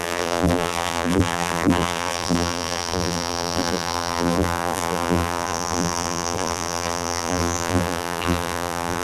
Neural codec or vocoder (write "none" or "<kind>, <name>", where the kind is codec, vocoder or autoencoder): vocoder, BigVGAN v2